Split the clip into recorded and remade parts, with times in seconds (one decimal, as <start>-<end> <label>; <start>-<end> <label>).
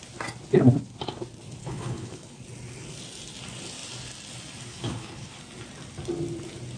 0.0-1.6 recorded; 1.6-2.4 remade; 2.4-4.7 recorded; 4.7-5.4 remade; 5.4-6.8 recorded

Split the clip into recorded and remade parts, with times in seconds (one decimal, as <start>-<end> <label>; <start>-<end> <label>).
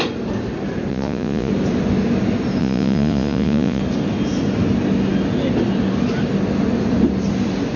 0.0-0.9 recorded; 0.9-1.5 remade; 1.5-2.6 recorded; 2.6-3.8 remade; 3.8-7.8 recorded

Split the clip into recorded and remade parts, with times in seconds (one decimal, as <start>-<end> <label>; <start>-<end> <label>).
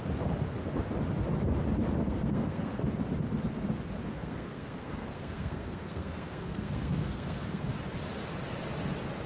0.0-2.0 recorded; 2.0-2.8 remade; 2.8-4.2 recorded; 4.2-7.6 remade; 7.6-9.3 recorded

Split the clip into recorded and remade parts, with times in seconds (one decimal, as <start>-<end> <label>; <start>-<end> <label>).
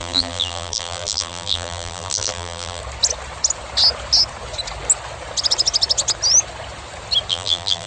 0.0-2.8 remade; 2.8-7.3 recorded; 7.3-7.9 remade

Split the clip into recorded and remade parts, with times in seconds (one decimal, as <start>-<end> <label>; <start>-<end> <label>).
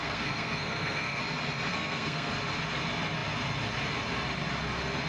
0.0-1.2 remade; 1.2-1.7 recorded; 1.7-2.3 remade; 2.3-5.1 recorded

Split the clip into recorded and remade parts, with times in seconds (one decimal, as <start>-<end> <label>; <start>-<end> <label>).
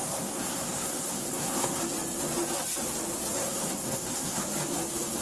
0.0-1.8 remade; 1.8-3.4 recorded; 3.4-4.4 remade; 4.4-5.2 recorded